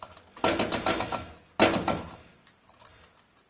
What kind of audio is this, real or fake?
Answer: real